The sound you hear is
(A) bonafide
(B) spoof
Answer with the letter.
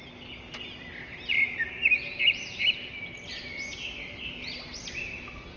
A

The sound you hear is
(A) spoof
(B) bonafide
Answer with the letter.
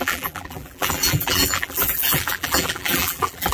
A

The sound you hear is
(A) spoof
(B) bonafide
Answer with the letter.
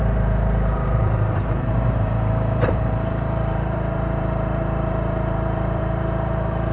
A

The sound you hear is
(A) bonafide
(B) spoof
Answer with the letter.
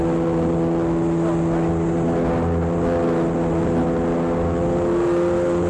A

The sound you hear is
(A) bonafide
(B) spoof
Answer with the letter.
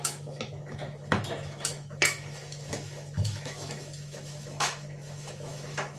B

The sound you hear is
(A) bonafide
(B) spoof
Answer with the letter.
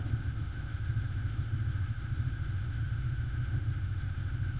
B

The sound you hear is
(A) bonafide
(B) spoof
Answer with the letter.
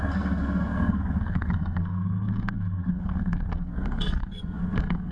B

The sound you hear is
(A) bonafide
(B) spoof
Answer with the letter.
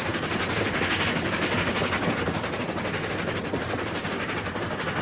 A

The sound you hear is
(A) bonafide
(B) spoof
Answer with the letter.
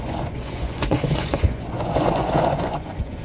B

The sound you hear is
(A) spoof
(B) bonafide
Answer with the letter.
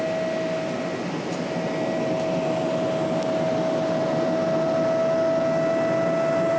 B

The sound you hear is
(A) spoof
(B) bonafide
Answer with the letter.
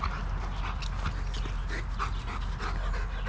B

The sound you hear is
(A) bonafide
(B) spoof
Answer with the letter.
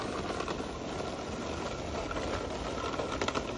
A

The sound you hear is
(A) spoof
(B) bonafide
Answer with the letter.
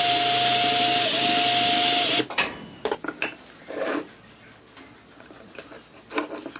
B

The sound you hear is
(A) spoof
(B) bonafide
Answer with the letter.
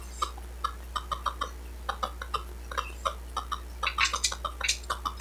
B